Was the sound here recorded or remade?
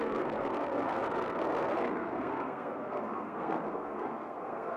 remade